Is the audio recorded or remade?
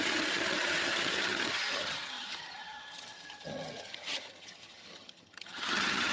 remade